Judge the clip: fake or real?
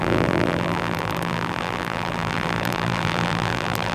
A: fake